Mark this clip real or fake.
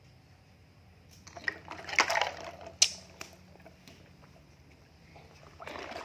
real